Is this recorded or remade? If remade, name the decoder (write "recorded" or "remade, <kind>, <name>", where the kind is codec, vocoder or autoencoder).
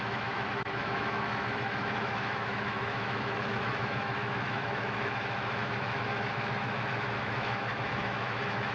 remade, autoencoder, DAC-VAE